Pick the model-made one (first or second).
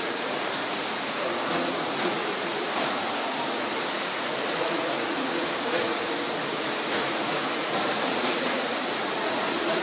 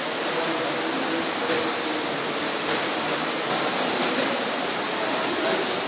first